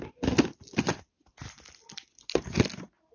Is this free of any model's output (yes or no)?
yes